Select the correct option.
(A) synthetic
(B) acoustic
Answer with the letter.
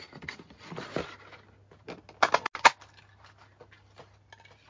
B